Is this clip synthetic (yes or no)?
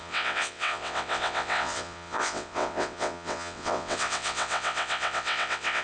yes